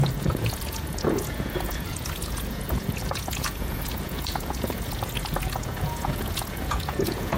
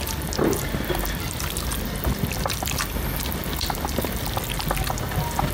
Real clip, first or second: second